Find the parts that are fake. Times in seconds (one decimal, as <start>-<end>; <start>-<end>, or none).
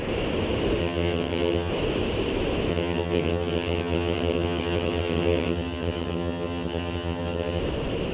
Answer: 0.8-1.7; 2.7-7.6